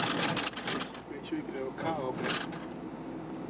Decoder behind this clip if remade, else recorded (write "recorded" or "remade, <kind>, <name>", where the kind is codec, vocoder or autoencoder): recorded